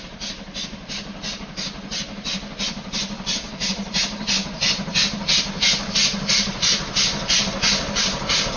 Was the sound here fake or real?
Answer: real